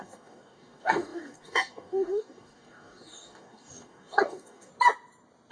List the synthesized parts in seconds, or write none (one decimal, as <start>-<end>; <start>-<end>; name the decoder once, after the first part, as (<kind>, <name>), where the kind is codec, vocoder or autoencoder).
0.0-4.7 (codec, DAC)